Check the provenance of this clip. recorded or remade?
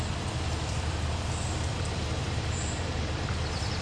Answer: remade